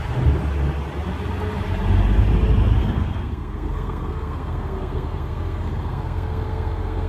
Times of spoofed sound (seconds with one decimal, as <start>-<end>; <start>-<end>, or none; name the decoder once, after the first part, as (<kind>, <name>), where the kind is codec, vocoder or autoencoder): 2.8-7.1 (codec, SNAC)